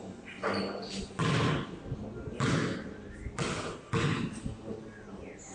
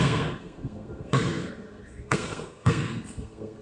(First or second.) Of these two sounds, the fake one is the second